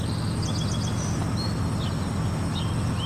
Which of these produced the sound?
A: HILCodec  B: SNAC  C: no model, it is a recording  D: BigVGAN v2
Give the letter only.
C